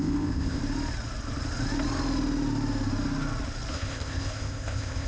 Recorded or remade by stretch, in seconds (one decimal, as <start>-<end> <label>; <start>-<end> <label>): 0.0-0.6 remade; 0.6-3.7 recorded; 3.7-5.1 remade